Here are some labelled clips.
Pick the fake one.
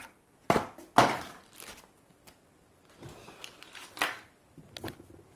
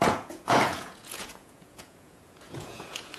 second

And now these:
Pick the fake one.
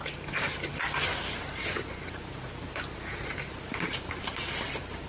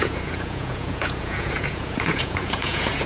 second